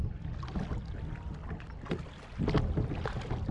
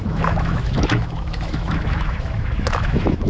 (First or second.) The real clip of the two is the first